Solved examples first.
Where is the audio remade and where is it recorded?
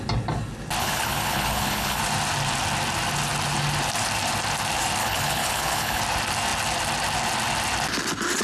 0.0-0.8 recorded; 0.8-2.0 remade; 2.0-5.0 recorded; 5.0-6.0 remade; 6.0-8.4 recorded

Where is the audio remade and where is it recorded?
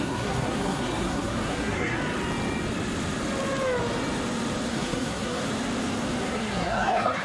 0.0-2.0 remade; 2.0-4.7 recorded; 4.7-5.4 remade; 5.4-6.2 recorded; 6.2-7.2 remade